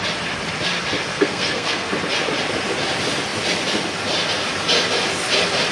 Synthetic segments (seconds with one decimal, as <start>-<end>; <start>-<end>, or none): 1.1-1.9